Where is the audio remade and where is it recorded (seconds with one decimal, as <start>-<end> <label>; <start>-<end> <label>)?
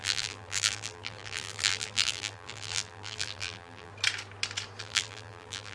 0.0-3.9 remade; 3.9-4.8 recorded; 4.8-5.7 remade